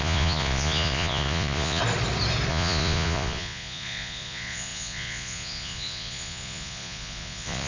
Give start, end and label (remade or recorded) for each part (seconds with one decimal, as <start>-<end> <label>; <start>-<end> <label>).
0.0-1.8 remade; 1.8-2.5 recorded; 2.5-7.7 remade